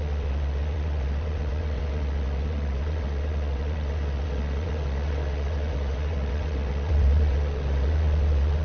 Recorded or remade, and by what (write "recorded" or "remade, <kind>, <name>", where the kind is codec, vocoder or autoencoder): remade, vocoder, WaveNeXt